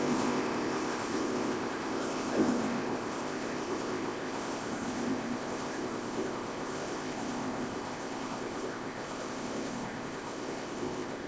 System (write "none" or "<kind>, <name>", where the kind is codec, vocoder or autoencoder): codec, ZipCodec